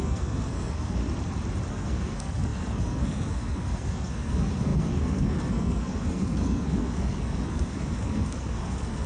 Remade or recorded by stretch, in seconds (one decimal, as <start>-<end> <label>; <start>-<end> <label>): 0.0-1.0 remade; 1.0-1.7 recorded; 1.7-9.1 remade